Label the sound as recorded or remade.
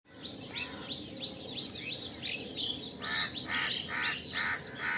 recorded